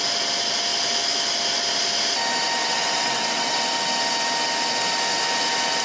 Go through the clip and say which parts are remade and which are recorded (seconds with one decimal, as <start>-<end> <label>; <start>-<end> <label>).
0.0-2.6 recorded; 2.6-3.6 remade; 3.6-5.8 recorded